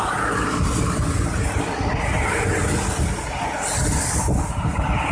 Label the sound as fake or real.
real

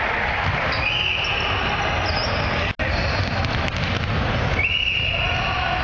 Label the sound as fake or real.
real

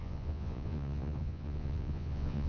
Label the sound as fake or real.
fake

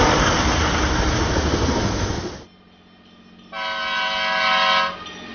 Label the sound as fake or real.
real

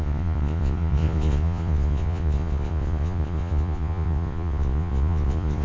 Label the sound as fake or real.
fake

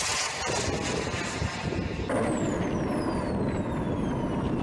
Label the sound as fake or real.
real